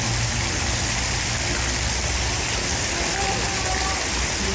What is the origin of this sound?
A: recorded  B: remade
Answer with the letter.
A